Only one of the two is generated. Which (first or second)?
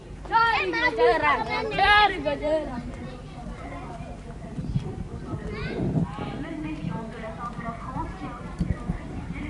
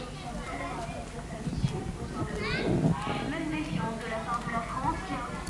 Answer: first